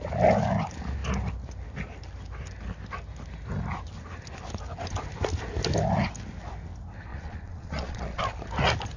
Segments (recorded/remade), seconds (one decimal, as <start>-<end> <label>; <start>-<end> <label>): 0.0-7.1 recorded; 7.1-8.2 remade; 8.2-9.0 recorded